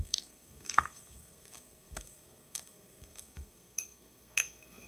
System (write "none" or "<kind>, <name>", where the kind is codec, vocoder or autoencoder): codec, SNAC